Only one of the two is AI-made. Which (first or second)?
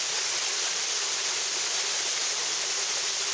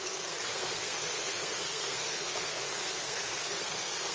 second